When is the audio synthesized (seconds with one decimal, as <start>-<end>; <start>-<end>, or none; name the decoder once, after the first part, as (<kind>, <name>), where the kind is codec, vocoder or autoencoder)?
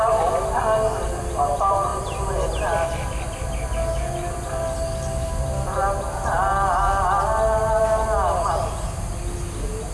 none